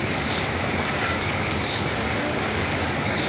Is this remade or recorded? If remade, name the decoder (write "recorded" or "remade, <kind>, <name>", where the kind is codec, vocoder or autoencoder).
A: remade, codec, DAC